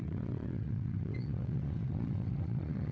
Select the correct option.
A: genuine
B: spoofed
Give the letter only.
B